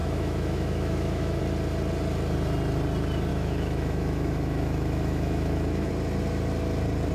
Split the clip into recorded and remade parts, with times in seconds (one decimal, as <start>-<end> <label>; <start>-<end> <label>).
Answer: 0.0-1.4 remade; 1.4-3.3 recorded; 3.3-5.9 remade; 5.9-7.1 recorded